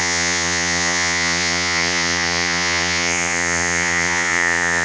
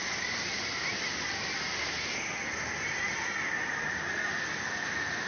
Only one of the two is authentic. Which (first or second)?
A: second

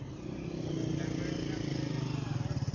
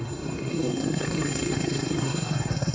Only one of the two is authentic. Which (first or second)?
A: first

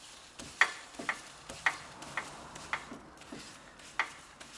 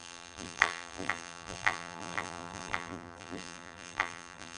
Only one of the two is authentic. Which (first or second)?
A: first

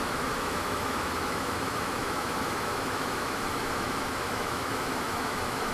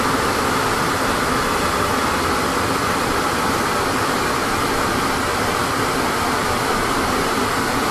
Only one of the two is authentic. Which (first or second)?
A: second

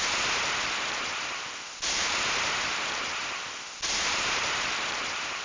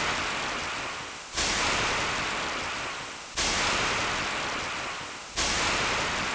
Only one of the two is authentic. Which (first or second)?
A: second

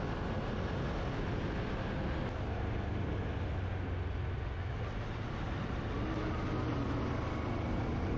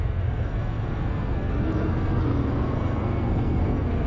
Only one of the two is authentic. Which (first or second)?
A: first